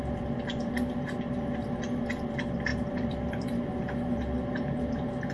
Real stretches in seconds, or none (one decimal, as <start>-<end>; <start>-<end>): 0.0-5.3